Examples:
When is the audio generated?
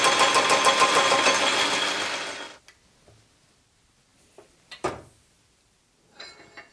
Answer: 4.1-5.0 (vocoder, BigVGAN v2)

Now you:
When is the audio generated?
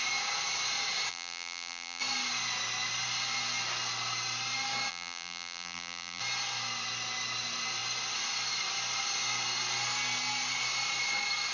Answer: 1.1-2.0 (vocoder, BigVGAN v2); 4.9-6.2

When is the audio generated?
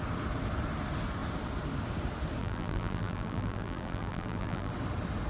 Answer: 2.4-4.7 (vocoder, BigVGAN v2)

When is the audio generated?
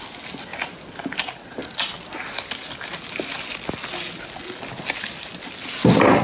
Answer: none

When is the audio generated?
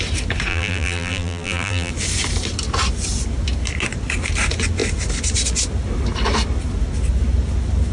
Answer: 0.5-1.9 (vocoder, BigVGAN v2)